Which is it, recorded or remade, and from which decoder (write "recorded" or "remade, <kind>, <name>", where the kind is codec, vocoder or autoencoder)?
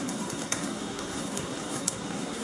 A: remade, codec, SNAC